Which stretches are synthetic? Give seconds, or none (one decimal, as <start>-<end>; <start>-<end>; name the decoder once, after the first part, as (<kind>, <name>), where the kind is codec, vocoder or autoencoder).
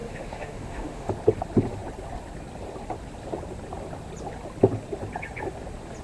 0.0-1.1 (autoencoder, DAC-VAE)